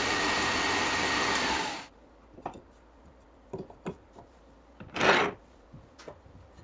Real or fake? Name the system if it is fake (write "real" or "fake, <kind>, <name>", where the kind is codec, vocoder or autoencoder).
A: real